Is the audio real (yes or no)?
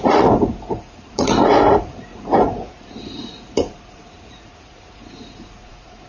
no